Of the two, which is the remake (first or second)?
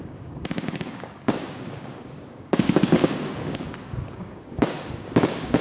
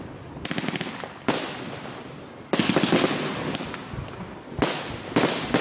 first